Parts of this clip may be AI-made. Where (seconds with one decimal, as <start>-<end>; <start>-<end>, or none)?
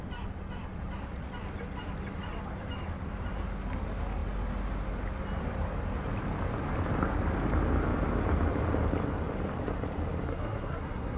10.3-11.2